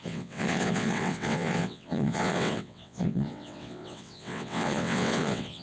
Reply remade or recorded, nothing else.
remade